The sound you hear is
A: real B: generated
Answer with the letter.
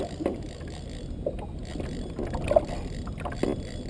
A